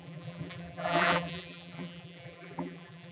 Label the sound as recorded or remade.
remade